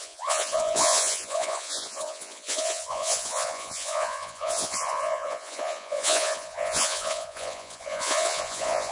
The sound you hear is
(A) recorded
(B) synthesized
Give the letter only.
B